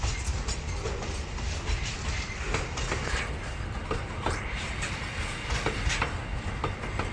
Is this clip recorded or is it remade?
recorded